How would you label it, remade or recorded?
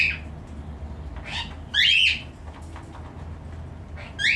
recorded